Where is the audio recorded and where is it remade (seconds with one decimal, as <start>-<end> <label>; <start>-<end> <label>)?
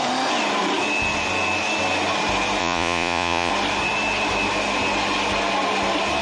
0.0-2.6 recorded; 2.6-3.5 remade; 3.5-6.2 recorded